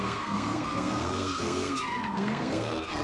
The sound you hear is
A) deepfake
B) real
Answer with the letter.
A